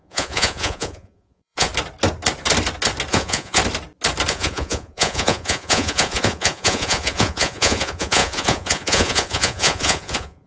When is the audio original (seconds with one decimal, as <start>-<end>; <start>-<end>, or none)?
1.7-3.1; 3.6-4.3